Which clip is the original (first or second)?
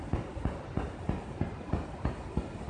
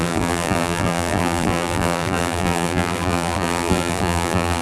first